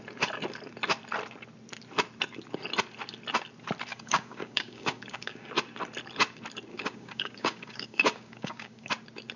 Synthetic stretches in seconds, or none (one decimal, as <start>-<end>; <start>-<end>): 3.9-5.5; 6.7-8.9